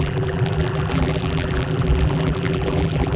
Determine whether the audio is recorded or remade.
remade